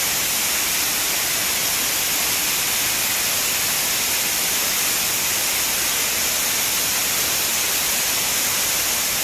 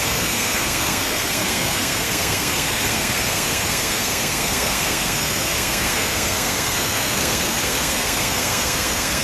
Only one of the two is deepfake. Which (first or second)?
second